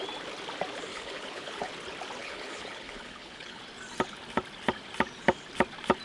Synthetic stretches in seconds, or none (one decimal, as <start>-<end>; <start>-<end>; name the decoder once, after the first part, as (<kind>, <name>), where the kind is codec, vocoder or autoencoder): 0.9-1.7 (codec, HILCodec); 2.2-3.6